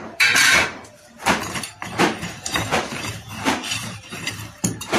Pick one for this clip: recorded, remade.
remade